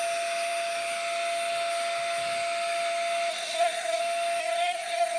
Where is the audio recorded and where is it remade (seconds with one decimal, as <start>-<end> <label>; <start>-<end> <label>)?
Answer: 0.0-3.3 recorded; 3.3-4.0 remade; 4.0-4.4 recorded; 4.4-5.2 remade